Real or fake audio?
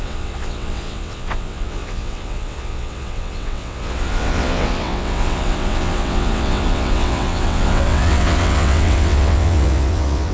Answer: fake